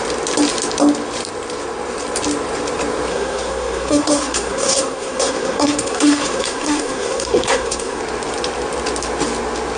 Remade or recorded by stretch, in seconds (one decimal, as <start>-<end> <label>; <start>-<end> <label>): 0.0-3.1 recorded; 3.1-8.0 remade; 8.0-9.8 recorded